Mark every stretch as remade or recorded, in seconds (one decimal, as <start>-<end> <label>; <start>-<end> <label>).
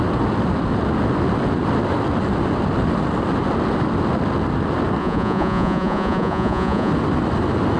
0.0-5.0 recorded; 5.0-6.9 remade; 6.9-7.8 recorded